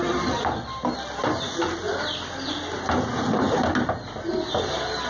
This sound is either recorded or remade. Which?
recorded